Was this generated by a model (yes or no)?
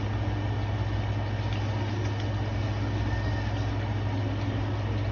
no